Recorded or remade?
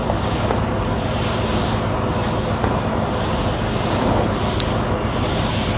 recorded